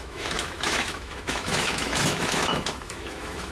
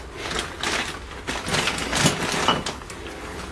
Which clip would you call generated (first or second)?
first